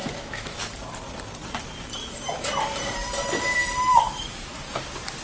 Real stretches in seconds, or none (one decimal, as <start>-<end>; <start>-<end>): 0.6-3.9; 4.5-5.2